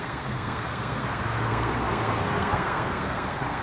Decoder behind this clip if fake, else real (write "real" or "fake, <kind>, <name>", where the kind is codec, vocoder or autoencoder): fake, codec, SNAC